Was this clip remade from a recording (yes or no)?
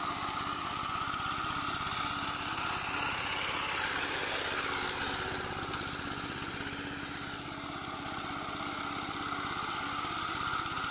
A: no